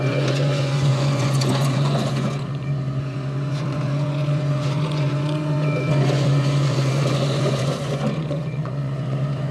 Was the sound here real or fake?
fake